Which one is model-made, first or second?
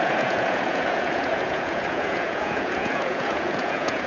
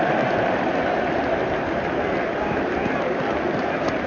first